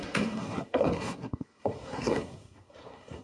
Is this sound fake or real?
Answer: fake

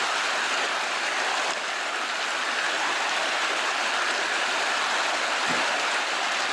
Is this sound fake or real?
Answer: real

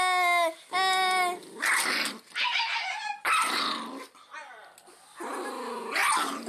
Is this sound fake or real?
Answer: real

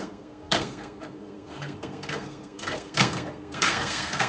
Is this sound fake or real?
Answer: fake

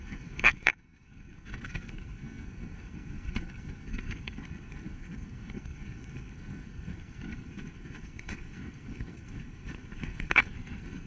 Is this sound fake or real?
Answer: fake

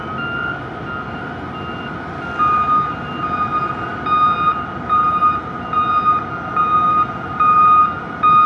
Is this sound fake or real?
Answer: real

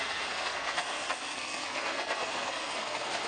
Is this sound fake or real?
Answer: fake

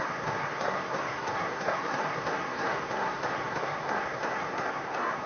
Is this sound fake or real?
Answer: fake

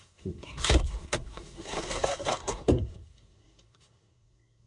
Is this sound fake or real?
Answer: fake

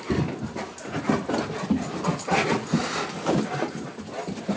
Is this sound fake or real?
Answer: real